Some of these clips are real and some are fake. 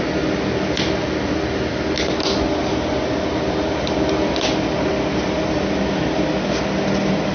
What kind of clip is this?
real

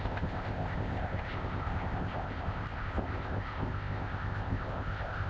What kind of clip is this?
fake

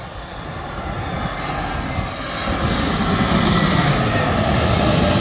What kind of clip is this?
real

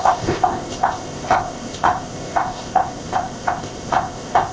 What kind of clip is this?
fake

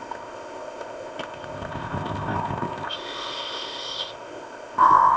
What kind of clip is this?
fake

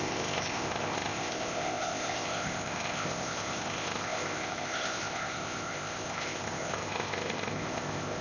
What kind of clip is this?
fake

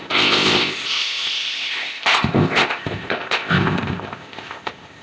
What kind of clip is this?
fake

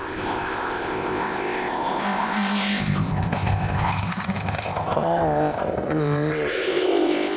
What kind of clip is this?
fake